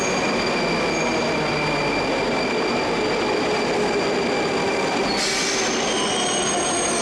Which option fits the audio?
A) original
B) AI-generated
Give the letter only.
A